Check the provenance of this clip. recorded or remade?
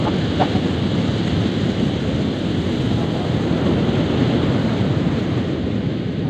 recorded